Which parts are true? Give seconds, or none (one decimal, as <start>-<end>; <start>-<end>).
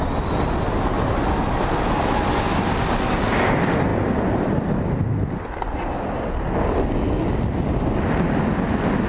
0.0-9.1